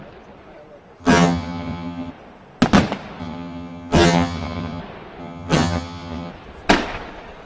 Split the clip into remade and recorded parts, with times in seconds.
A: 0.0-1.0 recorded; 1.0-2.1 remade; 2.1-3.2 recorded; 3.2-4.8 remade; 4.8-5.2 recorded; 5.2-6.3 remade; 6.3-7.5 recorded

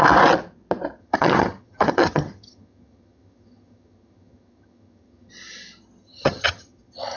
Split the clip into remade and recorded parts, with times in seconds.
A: 0.0-1.0 recorded; 1.0-5.3 remade; 5.3-6.0 recorded; 6.0-7.2 remade